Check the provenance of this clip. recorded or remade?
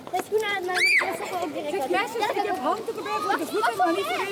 recorded